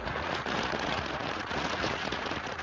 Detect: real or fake fake